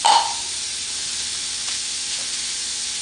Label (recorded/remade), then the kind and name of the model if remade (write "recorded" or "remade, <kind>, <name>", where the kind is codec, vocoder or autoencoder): recorded